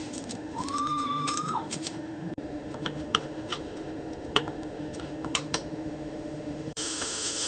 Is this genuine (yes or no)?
no